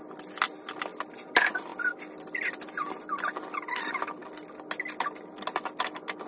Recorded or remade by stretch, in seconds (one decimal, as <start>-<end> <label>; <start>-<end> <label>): 0.0-6.3 recorded